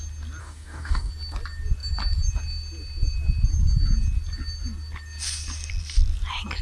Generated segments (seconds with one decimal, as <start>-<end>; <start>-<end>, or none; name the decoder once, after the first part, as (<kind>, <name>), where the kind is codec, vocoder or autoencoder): 0.4-1.1 (codec, DAC)